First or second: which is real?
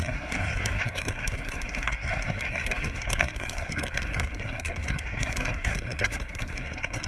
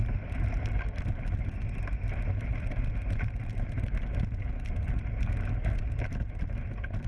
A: second